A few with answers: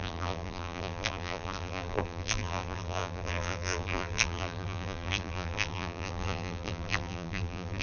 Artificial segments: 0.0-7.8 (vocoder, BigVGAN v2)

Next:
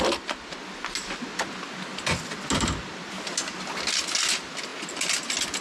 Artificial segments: none

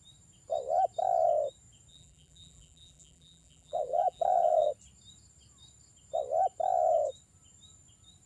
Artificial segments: 1.9-4.7 (vocoder, BigVGAN v2)

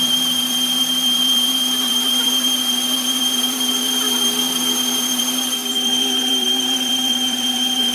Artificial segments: 0.0-7.9 (vocoder, BigVGAN v2)

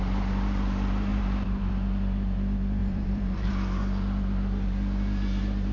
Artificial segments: 1.1-1.7 (vocoder, BigVGAN v2); 2.8-3.5

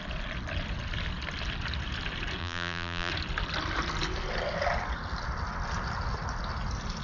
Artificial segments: 2.4-3.1 (vocoder, BigVGAN v2)

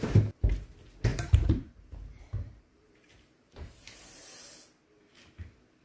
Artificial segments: 1.1-4.5 (vocoder, BigVGAN v2)